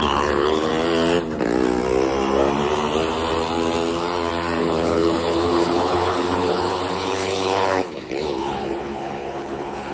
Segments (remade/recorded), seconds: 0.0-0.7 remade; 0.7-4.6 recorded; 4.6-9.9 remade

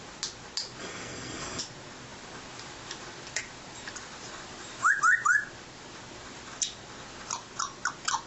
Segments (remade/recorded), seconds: 0.0-0.8 recorded; 0.8-1.6 remade; 1.6-8.3 recorded

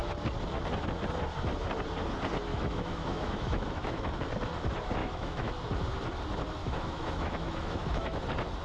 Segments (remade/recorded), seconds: 0.0-2.5 recorded; 2.5-4.1 remade; 4.1-5.0 recorded; 5.0-5.5 remade; 5.5-6.6 recorded; 6.6-8.2 remade; 8.2-8.6 recorded

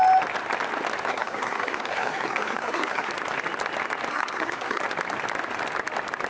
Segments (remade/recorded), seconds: 0.0-1.1 recorded; 1.1-3.1 remade; 3.1-4.1 recorded; 4.1-4.8 remade; 4.8-6.3 recorded

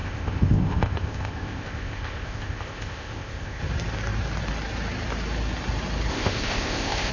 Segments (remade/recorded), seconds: 0.0-3.6 remade; 3.6-6.1 recorded; 6.1-7.1 remade